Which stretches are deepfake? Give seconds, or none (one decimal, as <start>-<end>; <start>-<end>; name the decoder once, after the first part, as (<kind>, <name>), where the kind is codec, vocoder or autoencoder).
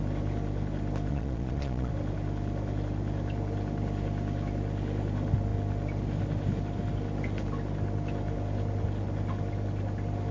1.1-1.9 (vocoder, Vocos)